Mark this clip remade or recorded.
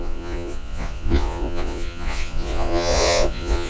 remade